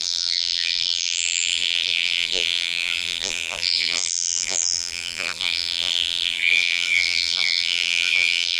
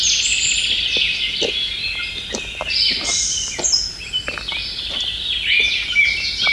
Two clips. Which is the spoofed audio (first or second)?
first